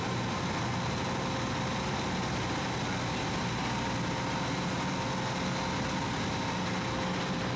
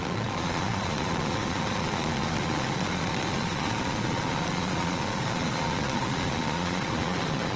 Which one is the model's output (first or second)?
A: second